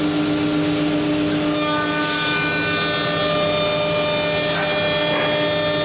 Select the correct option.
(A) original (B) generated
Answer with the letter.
A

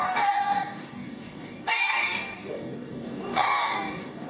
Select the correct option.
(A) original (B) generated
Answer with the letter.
B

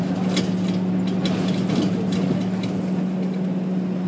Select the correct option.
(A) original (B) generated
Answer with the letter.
A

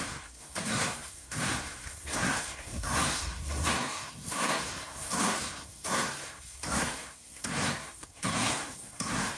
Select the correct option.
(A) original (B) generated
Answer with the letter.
B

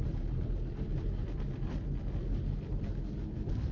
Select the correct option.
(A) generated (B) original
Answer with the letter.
B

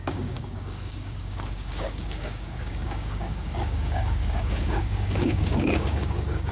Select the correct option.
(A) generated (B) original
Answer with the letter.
A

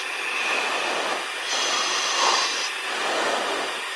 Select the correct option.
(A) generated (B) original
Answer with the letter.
B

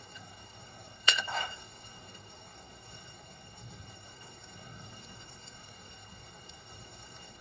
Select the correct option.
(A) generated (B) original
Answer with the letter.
A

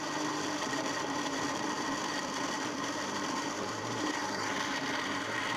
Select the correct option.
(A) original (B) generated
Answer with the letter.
B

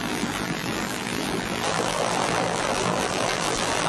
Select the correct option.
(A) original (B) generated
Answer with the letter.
B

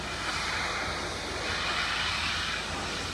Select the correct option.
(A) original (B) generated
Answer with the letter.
A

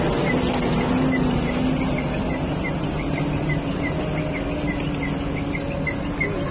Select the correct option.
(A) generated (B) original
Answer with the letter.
B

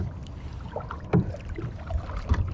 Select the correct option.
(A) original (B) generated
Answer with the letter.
A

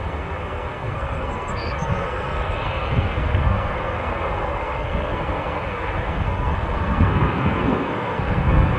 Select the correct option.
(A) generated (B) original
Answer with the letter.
A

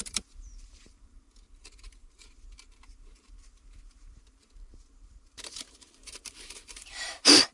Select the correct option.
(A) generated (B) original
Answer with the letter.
A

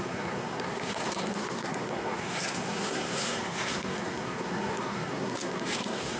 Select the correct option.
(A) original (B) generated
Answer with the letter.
B